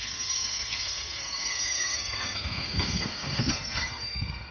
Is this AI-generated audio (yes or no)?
yes